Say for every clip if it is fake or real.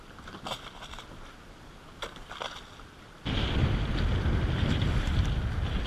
real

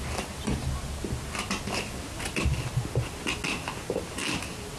real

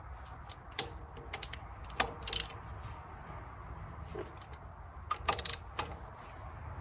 real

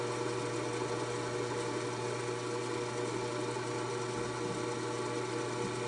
real